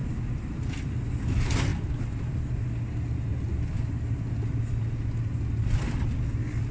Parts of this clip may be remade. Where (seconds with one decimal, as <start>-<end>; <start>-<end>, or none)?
none